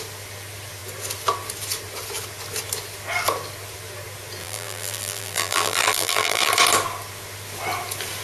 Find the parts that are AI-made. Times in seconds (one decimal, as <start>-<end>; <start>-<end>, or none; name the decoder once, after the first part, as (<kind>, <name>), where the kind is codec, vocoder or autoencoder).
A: 4.4-6.5 (vocoder, BigVGAN v2)